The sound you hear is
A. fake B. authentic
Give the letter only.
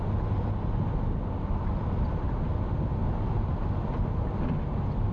B